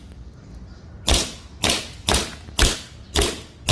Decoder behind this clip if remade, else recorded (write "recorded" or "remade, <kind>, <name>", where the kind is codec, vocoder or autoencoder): recorded